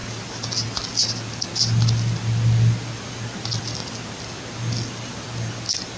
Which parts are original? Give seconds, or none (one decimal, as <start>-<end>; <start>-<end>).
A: 0.0-6.0